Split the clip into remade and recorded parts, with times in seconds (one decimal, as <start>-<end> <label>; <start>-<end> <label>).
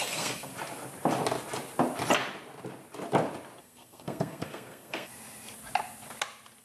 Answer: 0.0-0.5 remade; 0.5-3.6 recorded; 3.6-5.1 remade; 5.1-6.6 recorded